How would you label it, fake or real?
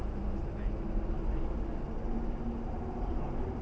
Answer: real